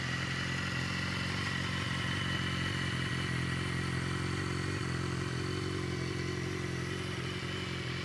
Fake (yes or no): no